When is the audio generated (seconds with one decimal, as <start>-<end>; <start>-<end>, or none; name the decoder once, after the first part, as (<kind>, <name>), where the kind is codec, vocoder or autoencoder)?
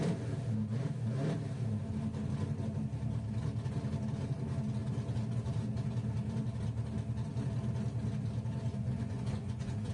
8.7-9.9 (vocoder, Vocos)